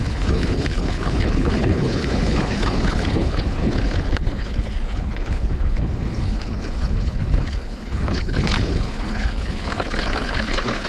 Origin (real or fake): fake